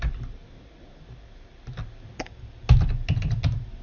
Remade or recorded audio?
recorded